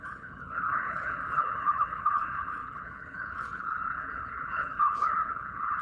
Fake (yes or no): yes